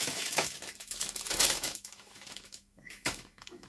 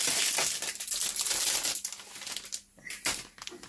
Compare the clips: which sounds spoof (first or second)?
first